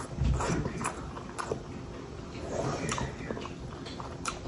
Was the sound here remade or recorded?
recorded